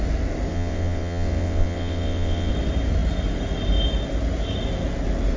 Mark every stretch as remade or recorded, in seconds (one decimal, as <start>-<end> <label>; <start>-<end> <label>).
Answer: 0.0-0.5 recorded; 0.5-2.5 remade; 2.5-5.4 recorded